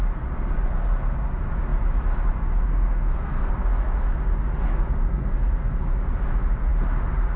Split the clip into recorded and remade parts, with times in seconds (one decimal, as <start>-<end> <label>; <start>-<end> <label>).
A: 0.0-2.7 recorded; 2.7-3.5 remade; 3.5-5.0 recorded; 5.0-5.5 remade; 5.5-7.4 recorded